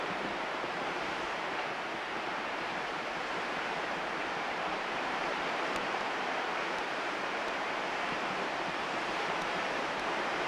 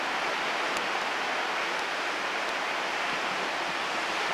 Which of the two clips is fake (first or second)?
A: first